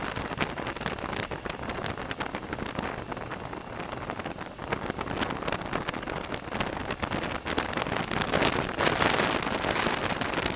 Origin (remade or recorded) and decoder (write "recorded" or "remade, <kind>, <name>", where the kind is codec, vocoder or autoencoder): recorded